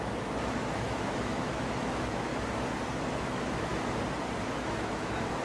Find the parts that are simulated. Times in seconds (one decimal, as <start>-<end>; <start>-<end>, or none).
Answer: 0.0-2.3; 3.2-3.7; 4.5-5.4